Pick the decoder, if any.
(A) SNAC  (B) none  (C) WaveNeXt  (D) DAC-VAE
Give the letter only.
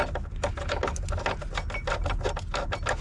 B